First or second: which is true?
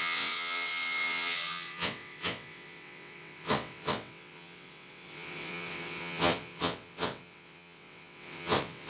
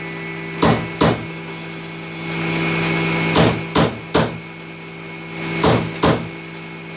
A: second